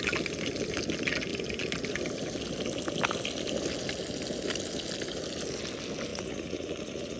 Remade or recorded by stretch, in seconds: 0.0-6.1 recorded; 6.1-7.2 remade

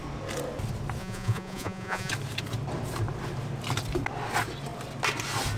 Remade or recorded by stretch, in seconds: 0.0-1.0 recorded; 1.0-2.1 remade; 2.1-5.6 recorded

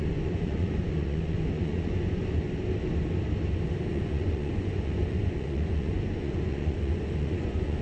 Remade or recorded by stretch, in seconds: 0.0-2.2 remade; 2.2-3.9 recorded; 3.9-7.8 remade

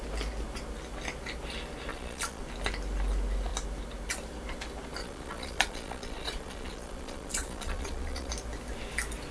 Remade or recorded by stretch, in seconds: 0.0-1.9 recorded; 1.9-2.4 remade; 2.4-5.0 recorded; 5.0-8.3 remade; 8.3-9.3 recorded